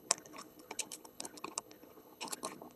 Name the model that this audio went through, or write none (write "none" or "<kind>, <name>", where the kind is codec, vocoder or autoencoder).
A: codec, HILCodec